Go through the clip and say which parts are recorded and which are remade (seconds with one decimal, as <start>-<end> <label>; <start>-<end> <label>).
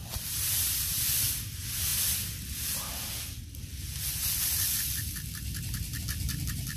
0.0-1.1 remade; 1.1-6.8 recorded